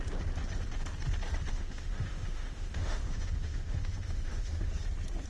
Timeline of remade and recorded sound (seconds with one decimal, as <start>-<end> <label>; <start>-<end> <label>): 0.0-1.5 recorded; 1.5-4.7 remade; 4.7-5.3 recorded